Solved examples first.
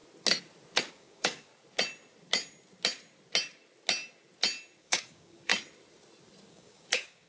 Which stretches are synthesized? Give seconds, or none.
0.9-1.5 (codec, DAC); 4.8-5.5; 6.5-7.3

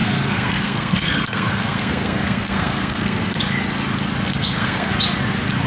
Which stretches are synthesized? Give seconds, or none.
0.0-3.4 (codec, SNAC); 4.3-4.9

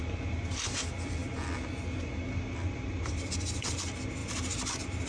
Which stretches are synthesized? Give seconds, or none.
none

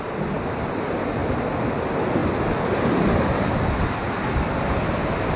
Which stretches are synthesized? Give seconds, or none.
none

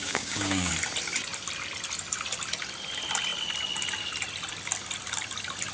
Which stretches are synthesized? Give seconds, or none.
0.0-0.7 (codec, DAC)

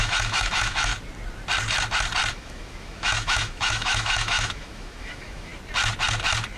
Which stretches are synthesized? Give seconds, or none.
0.0-0.9 (autoencoder, DAC-VAE); 2.3-5.5

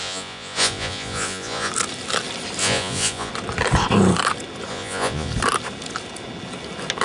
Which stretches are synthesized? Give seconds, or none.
0.0-1.7 (vocoder, Vocos); 2.6-3.3; 4.7-5.3